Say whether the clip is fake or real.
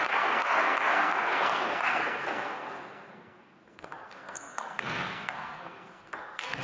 fake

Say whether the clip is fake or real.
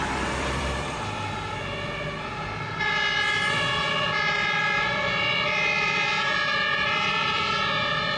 fake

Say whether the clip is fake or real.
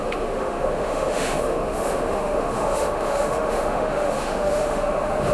fake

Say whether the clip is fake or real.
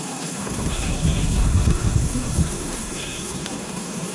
fake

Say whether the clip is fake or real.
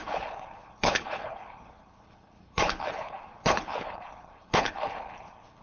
fake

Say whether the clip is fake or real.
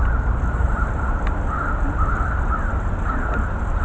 real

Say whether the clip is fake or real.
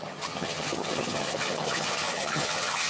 fake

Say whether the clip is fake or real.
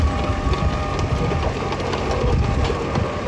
real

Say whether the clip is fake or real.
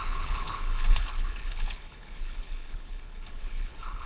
fake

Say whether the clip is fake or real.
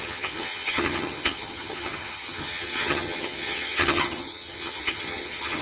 fake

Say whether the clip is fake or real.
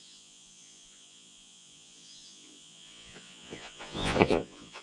fake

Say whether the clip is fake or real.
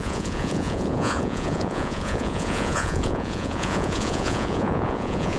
fake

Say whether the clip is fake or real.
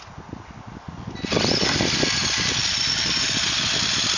real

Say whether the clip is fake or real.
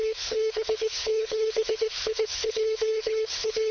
fake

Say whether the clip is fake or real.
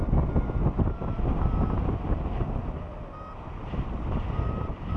real